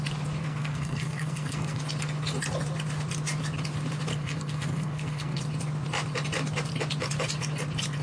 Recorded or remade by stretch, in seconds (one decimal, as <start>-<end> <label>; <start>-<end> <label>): 0.0-0.4 recorded; 0.4-1.8 remade; 1.8-4.1 recorded; 4.1-5.4 remade; 5.4-8.0 recorded